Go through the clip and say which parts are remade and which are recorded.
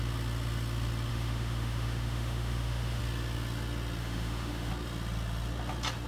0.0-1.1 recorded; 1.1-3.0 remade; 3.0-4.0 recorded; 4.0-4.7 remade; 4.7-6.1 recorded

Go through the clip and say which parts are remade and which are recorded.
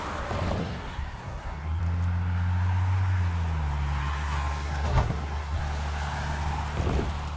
0.0-0.6 recorded; 0.6-1.8 remade; 1.8-4.0 recorded; 4.0-5.6 remade; 5.6-7.4 recorded